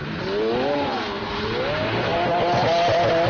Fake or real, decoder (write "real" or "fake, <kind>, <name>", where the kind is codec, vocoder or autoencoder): real